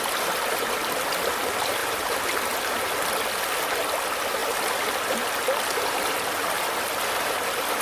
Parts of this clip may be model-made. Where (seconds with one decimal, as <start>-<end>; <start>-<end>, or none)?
1.8-2.6